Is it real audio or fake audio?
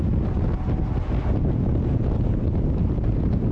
real